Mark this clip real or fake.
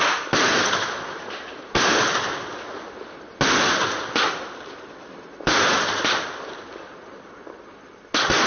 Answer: real